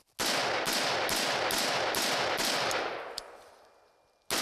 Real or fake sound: real